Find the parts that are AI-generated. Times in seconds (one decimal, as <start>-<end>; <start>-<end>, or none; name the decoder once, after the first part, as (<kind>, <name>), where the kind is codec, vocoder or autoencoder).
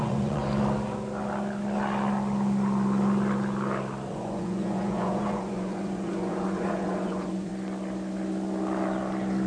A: 0.0-0.4 (vocoder, Vocos); 4.1-7.5